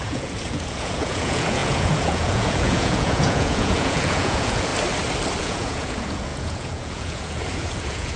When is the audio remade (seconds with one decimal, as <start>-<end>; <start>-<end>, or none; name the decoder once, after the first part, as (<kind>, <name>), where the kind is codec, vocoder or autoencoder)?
0.0-4.7 (vocoder, Vocos); 5.4-8.2